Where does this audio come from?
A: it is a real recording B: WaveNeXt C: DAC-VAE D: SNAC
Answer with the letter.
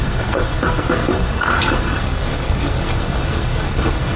D